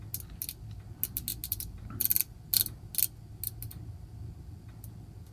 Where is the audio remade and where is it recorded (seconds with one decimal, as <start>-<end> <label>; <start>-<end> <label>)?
0.0-5.3 recorded